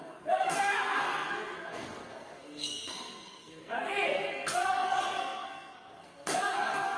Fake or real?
fake